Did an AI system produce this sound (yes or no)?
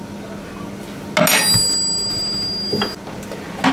no